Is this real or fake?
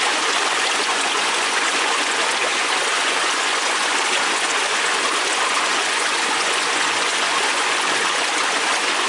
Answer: fake